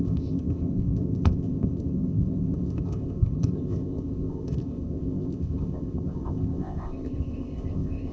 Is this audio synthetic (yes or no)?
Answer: yes